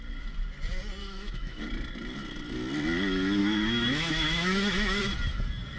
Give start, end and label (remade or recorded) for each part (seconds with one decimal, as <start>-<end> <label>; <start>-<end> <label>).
0.0-1.0 recorded; 1.0-1.6 remade; 1.6-3.4 recorded; 3.4-5.0 remade; 5.0-5.8 recorded

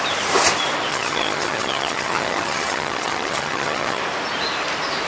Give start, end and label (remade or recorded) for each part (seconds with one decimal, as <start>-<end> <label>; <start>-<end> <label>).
0.0-0.9 recorded; 0.9-4.0 remade; 4.0-5.1 recorded

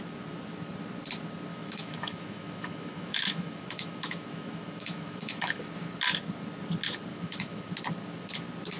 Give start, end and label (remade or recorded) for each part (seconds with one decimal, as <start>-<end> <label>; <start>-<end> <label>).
0.0-1.5 recorded; 1.5-5.6 remade; 5.6-7.1 recorded; 7.1-7.7 remade; 7.7-8.8 recorded

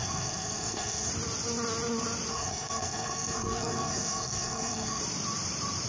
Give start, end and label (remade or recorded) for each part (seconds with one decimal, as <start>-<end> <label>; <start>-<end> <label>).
0.0-1.1 remade; 1.1-2.3 recorded; 2.3-5.0 remade; 5.0-5.9 recorded

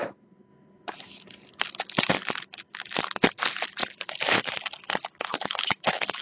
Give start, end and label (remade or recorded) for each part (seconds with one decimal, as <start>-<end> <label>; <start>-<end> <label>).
0.0-5.3 recorded; 5.3-6.2 remade